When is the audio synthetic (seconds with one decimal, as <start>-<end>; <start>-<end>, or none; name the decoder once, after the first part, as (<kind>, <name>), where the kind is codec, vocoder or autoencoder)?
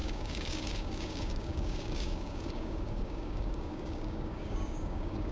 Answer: 0.0-5.3 (codec, DAC)